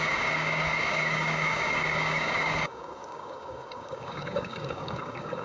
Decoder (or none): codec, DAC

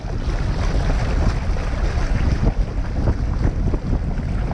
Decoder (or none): none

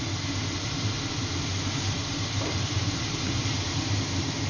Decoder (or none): vocoder, BigVGAN v2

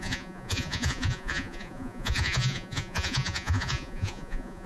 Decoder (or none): vocoder, Vocos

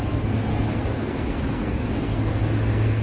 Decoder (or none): codec, SNAC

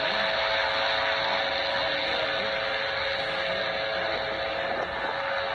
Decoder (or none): none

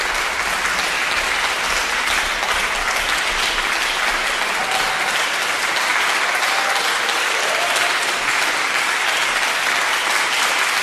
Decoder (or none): none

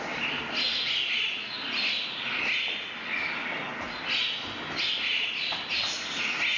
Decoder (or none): none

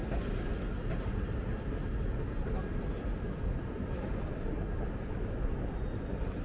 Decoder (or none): none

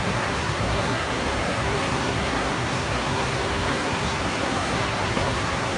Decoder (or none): codec, SNAC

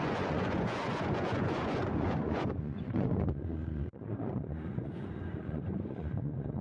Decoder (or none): vocoder, Vocos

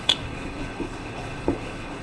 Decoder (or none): codec, HILCodec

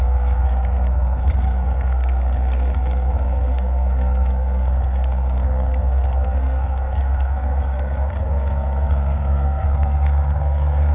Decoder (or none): codec, SNAC